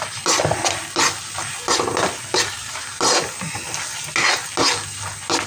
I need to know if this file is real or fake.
real